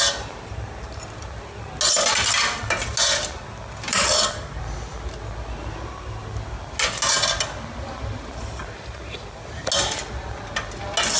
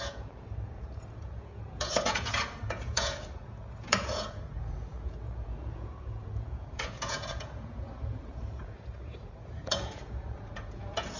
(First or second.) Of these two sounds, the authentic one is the first